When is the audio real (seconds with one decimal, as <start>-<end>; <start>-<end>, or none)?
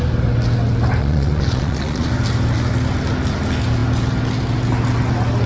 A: 0.0-1.0; 2.1-5.5